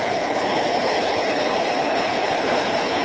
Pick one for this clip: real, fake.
fake